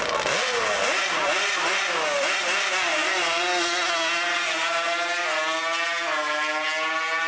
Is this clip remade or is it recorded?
recorded